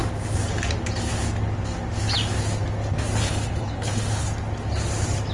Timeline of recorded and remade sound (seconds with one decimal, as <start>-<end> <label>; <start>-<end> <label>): 0.0-3.2 recorded; 3.2-4.3 remade; 4.3-5.3 recorded